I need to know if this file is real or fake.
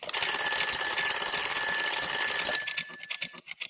real